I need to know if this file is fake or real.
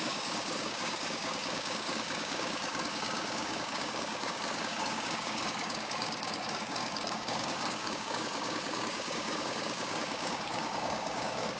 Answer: fake